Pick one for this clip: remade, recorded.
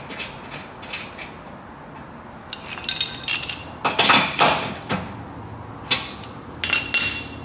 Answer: recorded